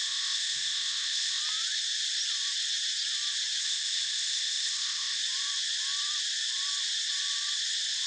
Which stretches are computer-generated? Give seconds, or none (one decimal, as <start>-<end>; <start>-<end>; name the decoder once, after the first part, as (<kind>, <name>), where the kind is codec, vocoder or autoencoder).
0.0-1.4 (codec, ZipCodec); 3.6-5.2